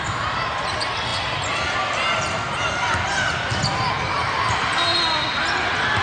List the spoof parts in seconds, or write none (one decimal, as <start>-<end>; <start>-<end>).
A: none